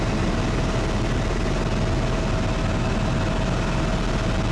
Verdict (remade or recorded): recorded